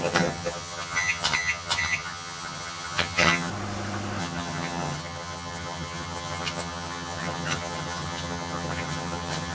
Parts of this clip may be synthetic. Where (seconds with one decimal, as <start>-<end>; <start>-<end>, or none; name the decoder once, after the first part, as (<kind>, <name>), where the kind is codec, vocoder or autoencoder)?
0.0-3.5 (vocoder, HiFi-GAN); 4.2-9.5